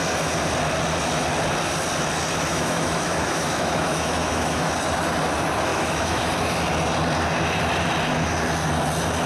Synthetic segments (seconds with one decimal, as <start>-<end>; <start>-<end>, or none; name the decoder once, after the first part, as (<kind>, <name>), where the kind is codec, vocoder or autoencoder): 2.5-4.7 (autoencoder, DAC-VAE); 5.7-6.3